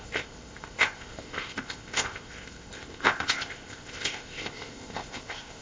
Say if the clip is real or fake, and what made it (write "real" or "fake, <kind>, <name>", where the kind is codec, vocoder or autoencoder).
fake, codec, ZipCodec